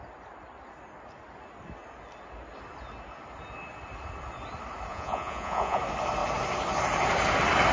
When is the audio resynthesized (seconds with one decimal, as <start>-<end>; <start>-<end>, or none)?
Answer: 4.9-5.8